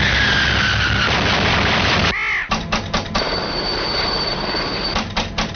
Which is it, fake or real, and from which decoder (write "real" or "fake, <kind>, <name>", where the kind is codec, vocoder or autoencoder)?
real